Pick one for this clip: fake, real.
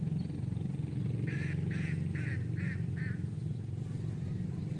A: real